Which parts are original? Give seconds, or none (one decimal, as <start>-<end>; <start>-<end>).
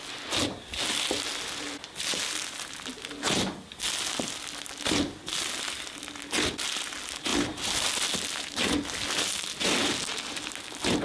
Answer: 0.0-7.3; 8.1-11.0